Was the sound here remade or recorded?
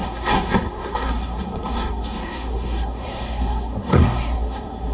remade